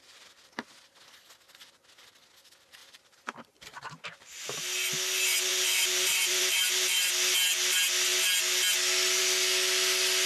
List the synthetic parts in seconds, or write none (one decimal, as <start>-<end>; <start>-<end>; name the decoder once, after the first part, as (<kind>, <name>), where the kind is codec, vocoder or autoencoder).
2.8-4.6 (vocoder, BigVGAN v2); 5.5-7.1